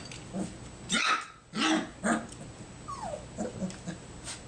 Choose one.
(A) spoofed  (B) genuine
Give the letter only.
B